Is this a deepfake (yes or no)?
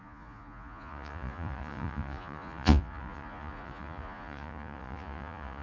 yes